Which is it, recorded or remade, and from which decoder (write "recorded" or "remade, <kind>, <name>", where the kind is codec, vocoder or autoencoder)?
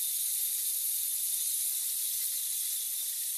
recorded